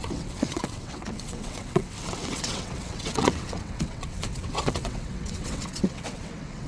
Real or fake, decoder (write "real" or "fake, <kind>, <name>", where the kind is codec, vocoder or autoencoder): fake, vocoder, WaveNeXt